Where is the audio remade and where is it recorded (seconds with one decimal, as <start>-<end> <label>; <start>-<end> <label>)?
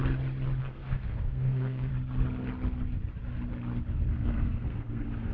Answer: 0.0-0.6 recorded; 0.6-1.9 remade; 1.9-4.1 recorded; 4.1-5.3 remade